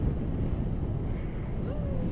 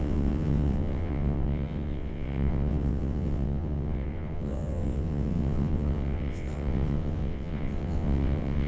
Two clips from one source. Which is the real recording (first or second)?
first